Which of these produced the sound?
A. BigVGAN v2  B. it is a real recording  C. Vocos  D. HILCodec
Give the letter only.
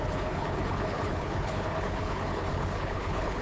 D